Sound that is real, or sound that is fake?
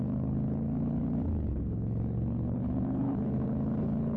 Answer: fake